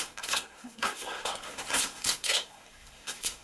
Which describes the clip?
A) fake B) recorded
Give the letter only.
A